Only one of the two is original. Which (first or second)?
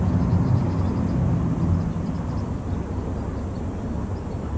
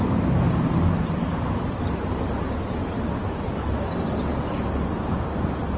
first